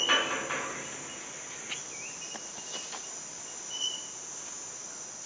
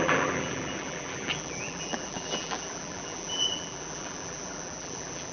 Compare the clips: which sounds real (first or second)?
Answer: first